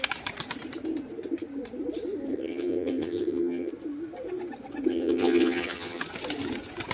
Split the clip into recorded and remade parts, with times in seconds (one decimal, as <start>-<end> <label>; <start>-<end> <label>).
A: 0.0-2.3 recorded; 2.3-3.7 remade; 3.7-4.9 recorded; 4.9-6.0 remade; 6.0-6.9 recorded

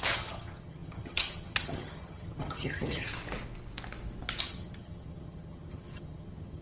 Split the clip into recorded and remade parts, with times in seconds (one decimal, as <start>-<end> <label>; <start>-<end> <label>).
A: 0.0-3.1 remade; 3.1-4.4 recorded; 4.4-6.6 remade